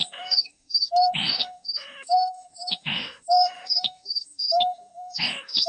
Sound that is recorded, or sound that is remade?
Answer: remade